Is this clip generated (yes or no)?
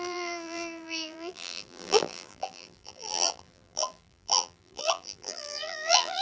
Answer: yes